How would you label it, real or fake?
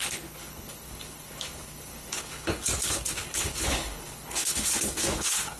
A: fake